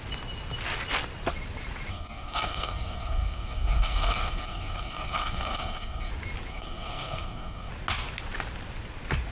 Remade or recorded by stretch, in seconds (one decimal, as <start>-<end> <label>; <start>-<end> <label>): 0.0-1.9 recorded; 1.9-6.1 remade; 6.1-6.5 recorded; 6.5-7.7 remade; 7.7-9.3 recorded